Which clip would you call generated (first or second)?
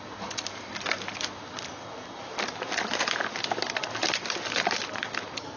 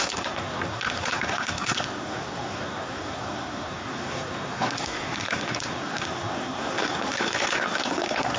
second